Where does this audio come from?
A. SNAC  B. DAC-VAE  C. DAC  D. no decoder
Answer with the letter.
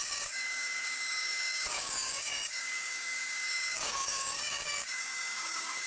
C